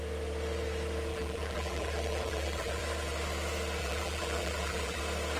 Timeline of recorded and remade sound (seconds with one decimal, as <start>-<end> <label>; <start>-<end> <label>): 0.0-1.1 recorded; 1.1-2.8 remade; 2.8-3.8 recorded; 3.8-5.0 remade; 5.0-5.4 recorded